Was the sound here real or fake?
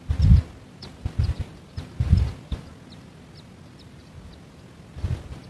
real